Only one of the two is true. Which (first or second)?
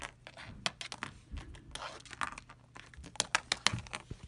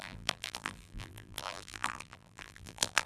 first